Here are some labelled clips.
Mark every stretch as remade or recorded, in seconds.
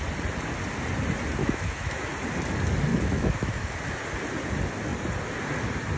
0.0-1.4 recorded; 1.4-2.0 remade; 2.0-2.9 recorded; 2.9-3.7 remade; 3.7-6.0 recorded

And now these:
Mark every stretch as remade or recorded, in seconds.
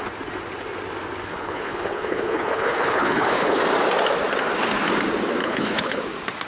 0.0-1.3 recorded; 1.3-3.6 remade; 3.6-5.4 recorded; 5.4-6.0 remade; 6.0-6.5 recorded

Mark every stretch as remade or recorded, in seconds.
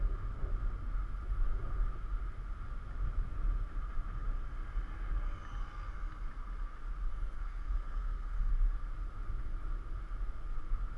0.0-7.1 recorded; 7.1-8.5 remade; 8.5-11.0 recorded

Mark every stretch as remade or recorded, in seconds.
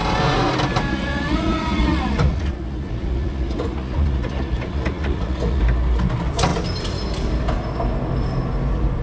0.0-0.9 recorded; 0.9-5.6 remade; 5.6-9.0 recorded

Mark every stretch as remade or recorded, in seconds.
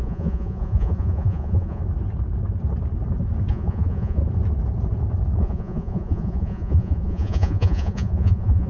0.0-1.8 remade; 1.8-3.5 recorded; 3.5-4.2 remade; 4.2-5.4 recorded; 5.4-8.7 remade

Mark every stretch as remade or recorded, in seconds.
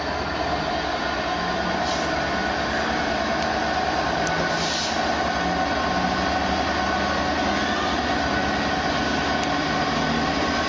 0.0-10.7 recorded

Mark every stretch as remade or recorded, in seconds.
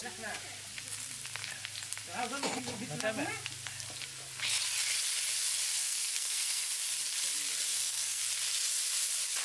0.0-5.7 recorded; 5.7-6.7 remade; 6.7-7.7 recorded; 7.7-8.2 remade; 8.2-9.4 recorded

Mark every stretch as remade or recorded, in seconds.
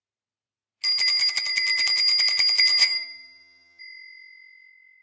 0.0-2.8 recorded; 2.8-3.8 remade; 3.8-5.0 recorded